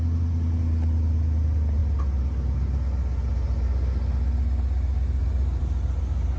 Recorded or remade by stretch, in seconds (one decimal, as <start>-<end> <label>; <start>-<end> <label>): 0.0-6.4 recorded